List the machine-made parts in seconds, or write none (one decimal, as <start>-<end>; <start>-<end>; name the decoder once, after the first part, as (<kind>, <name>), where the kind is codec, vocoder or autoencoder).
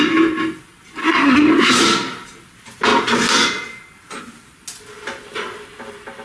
1.0-1.8 (codec, SNAC)